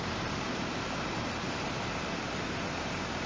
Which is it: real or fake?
fake